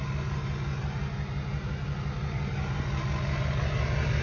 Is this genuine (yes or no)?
yes